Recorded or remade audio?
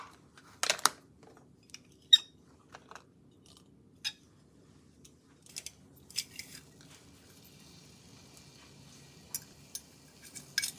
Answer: recorded